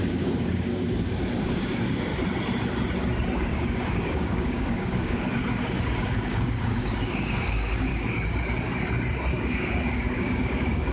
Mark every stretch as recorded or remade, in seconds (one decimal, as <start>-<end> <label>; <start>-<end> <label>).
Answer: 0.0-2.1 remade; 2.1-3.4 recorded; 3.4-7.9 remade; 7.9-9.3 recorded; 9.3-10.9 remade